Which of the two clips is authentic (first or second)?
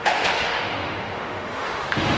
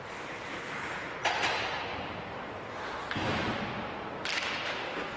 second